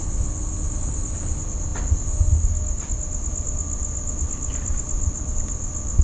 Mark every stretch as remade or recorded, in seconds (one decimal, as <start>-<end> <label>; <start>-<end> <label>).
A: 0.0-6.0 recorded